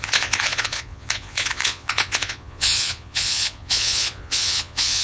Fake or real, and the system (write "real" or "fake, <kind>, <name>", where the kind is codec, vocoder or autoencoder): fake, vocoder, Vocos